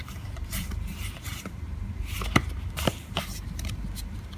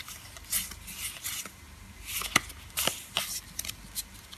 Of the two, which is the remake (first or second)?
first